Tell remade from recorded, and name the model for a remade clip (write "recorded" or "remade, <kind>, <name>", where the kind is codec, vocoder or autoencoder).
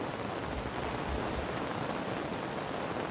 recorded